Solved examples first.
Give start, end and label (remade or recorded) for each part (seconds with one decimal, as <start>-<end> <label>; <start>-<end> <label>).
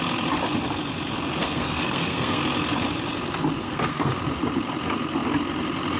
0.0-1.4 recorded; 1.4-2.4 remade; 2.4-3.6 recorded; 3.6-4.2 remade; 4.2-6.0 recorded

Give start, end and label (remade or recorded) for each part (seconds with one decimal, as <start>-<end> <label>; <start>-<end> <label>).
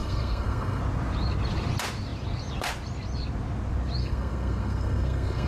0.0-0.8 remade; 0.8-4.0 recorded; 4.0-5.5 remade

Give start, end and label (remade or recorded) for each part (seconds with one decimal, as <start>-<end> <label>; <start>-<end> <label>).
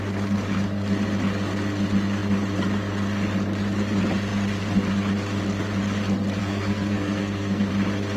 0.0-6.4 recorded; 6.4-7.7 remade; 7.7-8.2 recorded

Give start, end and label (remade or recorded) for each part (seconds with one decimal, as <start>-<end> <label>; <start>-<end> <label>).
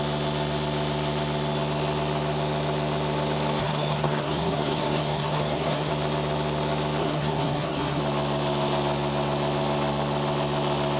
0.0-3.6 recorded; 3.6-5.9 remade; 5.9-7.0 recorded; 7.0-8.0 remade; 8.0-11.0 recorded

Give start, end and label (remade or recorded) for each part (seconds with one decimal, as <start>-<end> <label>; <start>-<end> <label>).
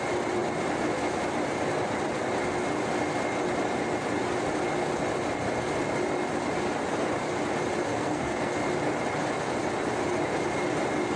0.0-7.9 recorded; 7.9-8.5 remade; 8.5-11.2 recorded